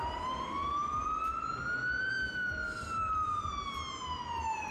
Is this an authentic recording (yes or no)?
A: yes